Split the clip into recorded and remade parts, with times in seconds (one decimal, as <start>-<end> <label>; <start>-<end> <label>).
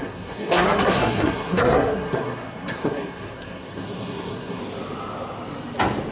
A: 0.0-4.6 remade; 4.6-6.1 recorded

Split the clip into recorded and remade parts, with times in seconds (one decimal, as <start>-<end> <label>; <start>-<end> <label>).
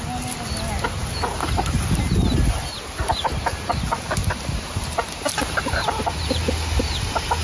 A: 0.0-4.2 recorded; 4.2-6.4 remade; 6.4-7.4 recorded